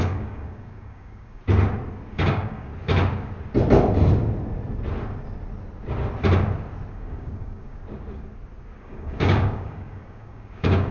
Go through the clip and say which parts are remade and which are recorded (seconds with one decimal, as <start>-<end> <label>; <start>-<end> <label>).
0.0-1.4 remade; 1.4-2.1 recorded; 2.1-2.7 remade; 2.7-6.9 recorded; 6.9-7.8 remade; 7.8-8.8 recorded; 8.8-10.9 remade